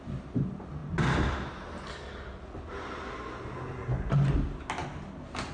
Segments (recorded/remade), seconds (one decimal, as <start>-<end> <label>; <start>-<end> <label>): 0.0-5.5 recorded